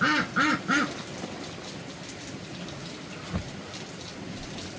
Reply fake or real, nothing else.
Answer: real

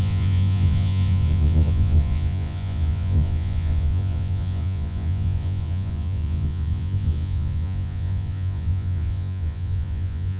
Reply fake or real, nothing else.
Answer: fake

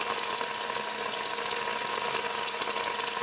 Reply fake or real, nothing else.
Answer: real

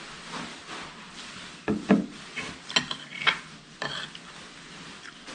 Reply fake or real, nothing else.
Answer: real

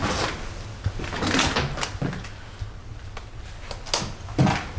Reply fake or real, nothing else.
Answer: real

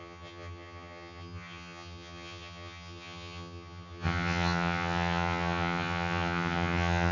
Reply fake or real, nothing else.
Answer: fake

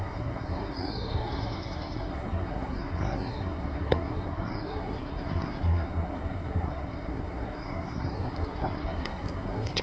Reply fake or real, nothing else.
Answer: fake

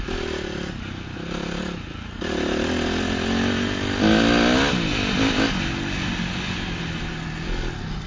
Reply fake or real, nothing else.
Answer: real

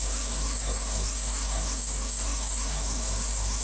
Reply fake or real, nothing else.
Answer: fake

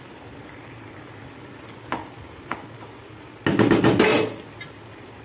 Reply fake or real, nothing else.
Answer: real